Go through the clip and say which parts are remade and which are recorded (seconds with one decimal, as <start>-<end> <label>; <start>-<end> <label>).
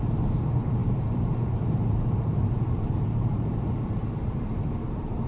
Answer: 0.0-0.8 recorded; 0.8-4.0 remade; 4.0-5.3 recorded